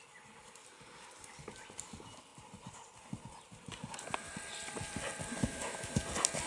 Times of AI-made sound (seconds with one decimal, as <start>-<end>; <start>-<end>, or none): 5.4-5.9